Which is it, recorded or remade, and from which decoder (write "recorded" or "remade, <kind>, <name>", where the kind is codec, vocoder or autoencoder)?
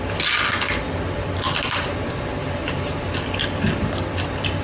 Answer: recorded